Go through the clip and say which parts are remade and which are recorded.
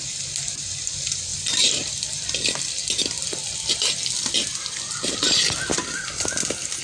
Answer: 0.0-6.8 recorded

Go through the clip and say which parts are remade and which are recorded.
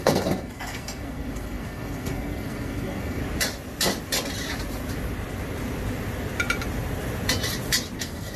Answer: 0.0-3.2 remade; 3.2-8.0 recorded; 8.0-8.4 remade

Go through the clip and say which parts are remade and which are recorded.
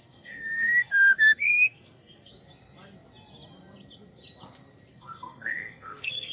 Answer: 0.0-2.3 remade; 2.3-4.9 recorded; 4.9-6.3 remade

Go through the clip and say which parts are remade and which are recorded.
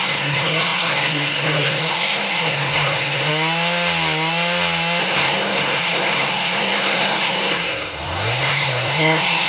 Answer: 0.0-3.3 remade; 3.3-5.0 recorded; 5.0-9.5 remade